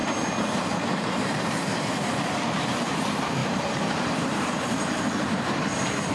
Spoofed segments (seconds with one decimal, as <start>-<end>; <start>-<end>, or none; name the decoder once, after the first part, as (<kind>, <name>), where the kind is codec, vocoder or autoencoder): 1.2-6.1 (vocoder, BigVGAN v2)